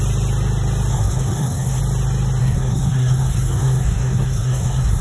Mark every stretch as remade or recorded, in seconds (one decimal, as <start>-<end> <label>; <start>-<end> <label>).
0.0-0.9 recorded; 0.9-1.8 remade; 1.8-2.4 recorded; 2.4-5.0 remade